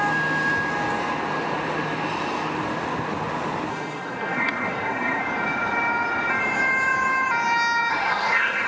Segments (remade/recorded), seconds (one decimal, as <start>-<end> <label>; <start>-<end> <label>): 0.0-3.7 recorded; 3.7-5.2 remade; 5.2-7.9 recorded; 7.9-8.7 remade